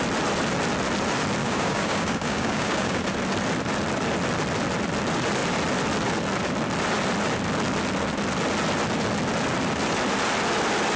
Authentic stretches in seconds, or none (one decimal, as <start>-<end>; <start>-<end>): 0.0-1.4; 3.0-11.0